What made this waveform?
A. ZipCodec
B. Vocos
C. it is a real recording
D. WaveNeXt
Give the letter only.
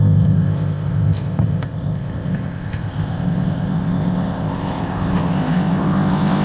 A